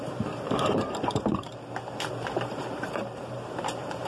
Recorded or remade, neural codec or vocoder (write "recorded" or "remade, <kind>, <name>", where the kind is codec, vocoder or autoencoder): remade, vocoder, BigVGAN v2